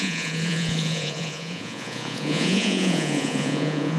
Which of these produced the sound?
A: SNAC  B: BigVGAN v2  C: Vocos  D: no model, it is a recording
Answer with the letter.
C